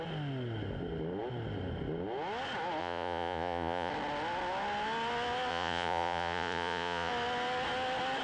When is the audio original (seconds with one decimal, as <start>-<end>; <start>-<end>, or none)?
0.0-2.8; 3.9-5.5; 7.1-8.2